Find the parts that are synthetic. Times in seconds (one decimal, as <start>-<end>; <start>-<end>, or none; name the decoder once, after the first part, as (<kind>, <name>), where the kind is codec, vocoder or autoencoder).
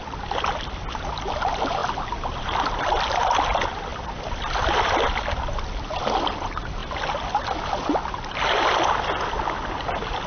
none